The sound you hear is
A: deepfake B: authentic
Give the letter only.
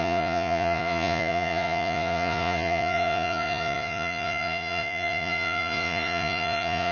A